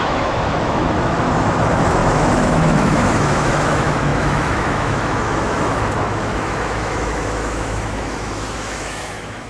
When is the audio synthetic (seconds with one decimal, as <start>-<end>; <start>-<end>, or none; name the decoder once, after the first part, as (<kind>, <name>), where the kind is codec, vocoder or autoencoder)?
0.0-9.5 (autoencoder, DAC-VAE)